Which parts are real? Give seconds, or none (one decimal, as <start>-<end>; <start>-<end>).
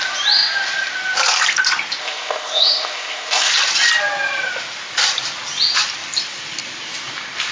0.0-2.0; 3.5-7.5